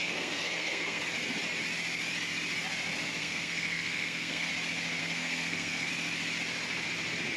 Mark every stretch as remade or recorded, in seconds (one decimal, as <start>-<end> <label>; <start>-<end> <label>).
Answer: 0.0-1.0 remade; 1.0-3.2 recorded; 3.2-4.5 remade; 4.5-5.0 recorded; 5.0-5.9 remade; 5.9-7.4 recorded